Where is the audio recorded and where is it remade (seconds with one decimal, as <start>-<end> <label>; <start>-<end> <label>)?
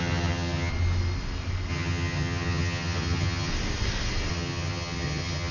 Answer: 0.0-0.7 remade; 0.7-1.7 recorded; 1.7-3.5 remade; 3.5-4.3 recorded; 4.3-5.5 remade